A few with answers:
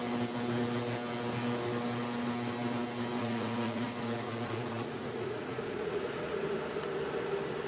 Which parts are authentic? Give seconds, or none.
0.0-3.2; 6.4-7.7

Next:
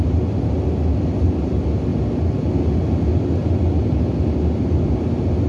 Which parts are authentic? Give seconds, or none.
0.0-5.5

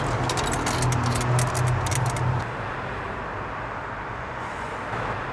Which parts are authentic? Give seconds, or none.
0.0-4.1; 4.7-5.3

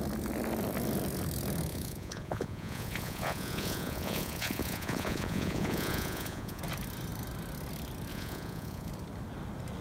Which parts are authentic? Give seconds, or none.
0.0-1.7; 6.6-8.1; 8.9-9.8

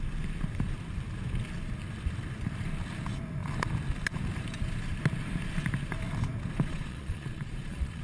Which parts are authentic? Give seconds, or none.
0.0-6.7

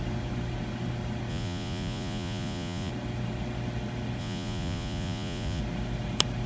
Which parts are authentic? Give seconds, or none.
0.0-1.3; 2.9-4.2; 5.6-6.5

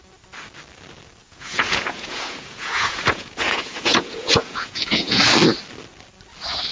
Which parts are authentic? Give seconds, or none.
0.0-1.2; 5.2-6.7

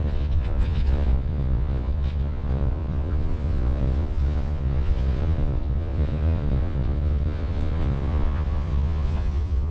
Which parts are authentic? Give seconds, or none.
none